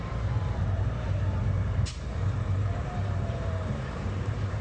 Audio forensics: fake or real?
fake